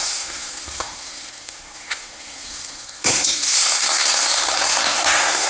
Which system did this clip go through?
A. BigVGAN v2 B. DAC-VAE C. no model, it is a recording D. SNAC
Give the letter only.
D